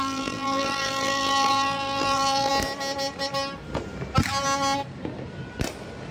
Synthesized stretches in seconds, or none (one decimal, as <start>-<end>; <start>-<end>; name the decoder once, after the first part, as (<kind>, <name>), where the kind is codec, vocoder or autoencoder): 0.0-2.5 (vocoder, BigVGAN v2)